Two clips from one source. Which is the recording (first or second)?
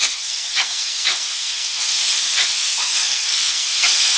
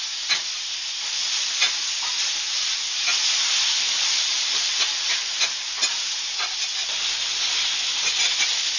second